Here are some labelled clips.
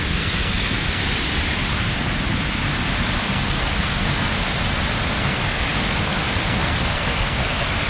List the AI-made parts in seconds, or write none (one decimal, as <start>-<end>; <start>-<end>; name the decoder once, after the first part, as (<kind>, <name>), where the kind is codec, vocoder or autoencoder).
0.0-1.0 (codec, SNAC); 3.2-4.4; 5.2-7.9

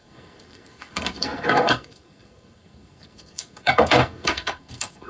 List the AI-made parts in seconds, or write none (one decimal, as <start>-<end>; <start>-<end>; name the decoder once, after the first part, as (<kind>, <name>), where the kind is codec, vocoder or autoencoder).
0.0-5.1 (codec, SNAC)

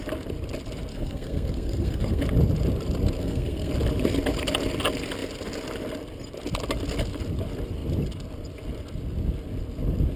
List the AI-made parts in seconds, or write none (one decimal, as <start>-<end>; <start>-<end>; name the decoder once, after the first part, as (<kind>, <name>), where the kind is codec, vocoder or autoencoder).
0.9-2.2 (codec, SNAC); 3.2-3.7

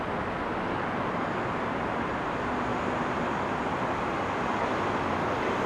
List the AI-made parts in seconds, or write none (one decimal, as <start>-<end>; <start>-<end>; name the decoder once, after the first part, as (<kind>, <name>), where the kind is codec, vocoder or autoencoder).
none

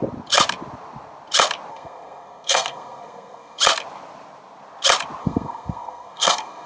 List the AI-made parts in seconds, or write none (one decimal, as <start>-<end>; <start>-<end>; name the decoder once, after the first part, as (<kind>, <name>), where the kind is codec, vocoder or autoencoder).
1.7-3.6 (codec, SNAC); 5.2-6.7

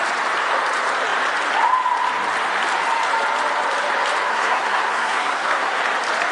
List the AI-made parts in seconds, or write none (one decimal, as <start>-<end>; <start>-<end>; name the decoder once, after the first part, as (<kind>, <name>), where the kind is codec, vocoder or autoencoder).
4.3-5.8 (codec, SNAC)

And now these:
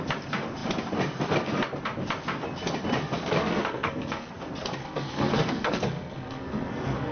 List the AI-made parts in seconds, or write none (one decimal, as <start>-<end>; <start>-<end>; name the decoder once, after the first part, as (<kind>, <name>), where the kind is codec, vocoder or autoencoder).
3.4-4.3 (codec, SNAC); 4.8-7.1